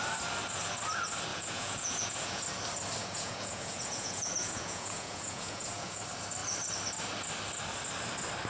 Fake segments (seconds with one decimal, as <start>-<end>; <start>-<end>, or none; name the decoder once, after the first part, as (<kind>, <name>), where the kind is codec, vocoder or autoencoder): 1.3-2.4 (vocoder, Vocos); 3.0-6.0